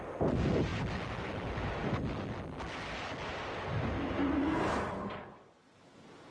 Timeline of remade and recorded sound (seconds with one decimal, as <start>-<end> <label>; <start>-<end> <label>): 0.0-6.3 recorded